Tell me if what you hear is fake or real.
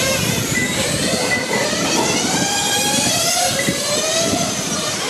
fake